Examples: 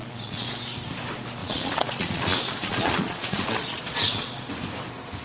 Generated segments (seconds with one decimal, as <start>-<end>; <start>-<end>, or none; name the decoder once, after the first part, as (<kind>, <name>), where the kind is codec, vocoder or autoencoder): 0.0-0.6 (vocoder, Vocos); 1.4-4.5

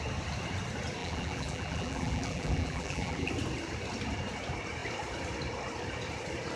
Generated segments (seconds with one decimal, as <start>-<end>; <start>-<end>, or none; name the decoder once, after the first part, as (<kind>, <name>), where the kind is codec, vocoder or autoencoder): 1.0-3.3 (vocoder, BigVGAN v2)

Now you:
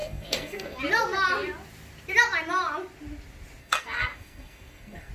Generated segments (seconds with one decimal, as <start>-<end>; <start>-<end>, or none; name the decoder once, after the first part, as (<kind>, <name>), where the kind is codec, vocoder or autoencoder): 0.0-0.8 (codec, SNAC); 3.6-5.1

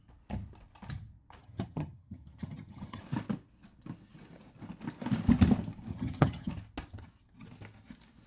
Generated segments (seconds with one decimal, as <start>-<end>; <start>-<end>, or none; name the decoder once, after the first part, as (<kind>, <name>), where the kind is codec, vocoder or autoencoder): 1.4-3.0 (vocoder, HiFi-GAN); 5.9-6.5